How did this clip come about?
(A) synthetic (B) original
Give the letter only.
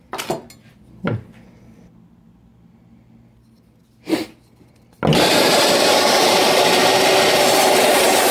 B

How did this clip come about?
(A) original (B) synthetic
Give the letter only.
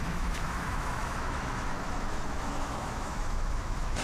B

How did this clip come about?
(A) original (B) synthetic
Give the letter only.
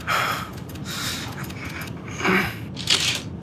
A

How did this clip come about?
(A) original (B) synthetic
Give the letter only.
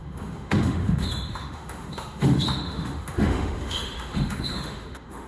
B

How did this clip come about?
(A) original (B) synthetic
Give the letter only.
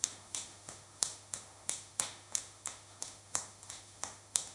B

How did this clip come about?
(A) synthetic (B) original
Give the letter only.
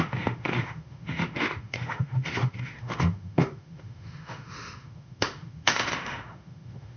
A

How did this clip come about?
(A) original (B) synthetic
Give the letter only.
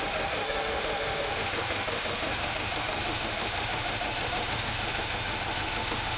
B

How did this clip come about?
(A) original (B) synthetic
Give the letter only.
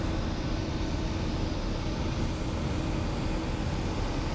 A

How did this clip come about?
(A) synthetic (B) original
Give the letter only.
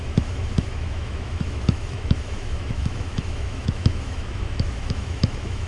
A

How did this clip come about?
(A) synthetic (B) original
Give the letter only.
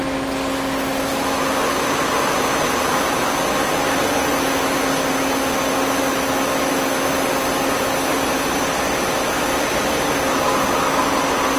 B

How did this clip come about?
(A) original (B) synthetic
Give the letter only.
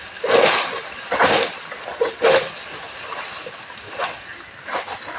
A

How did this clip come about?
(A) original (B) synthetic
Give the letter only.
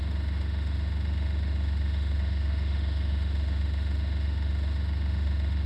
B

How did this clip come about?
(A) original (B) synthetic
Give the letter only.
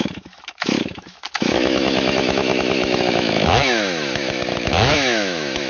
B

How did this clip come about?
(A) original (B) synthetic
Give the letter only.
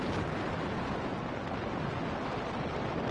A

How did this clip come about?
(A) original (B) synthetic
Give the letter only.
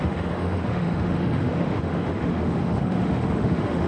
B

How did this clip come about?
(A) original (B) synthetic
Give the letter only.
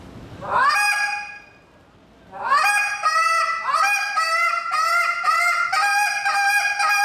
A